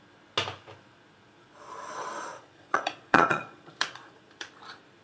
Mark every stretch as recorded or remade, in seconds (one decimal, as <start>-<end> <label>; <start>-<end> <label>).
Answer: 0.0-2.3 recorded; 2.3-4.3 remade; 4.3-5.0 recorded